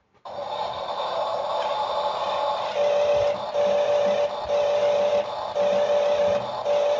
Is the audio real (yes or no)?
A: yes